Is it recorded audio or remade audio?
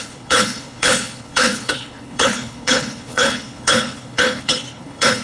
remade